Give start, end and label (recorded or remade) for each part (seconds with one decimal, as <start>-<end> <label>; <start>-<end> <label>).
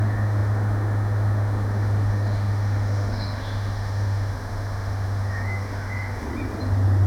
0.0-6.3 remade; 6.3-7.1 recorded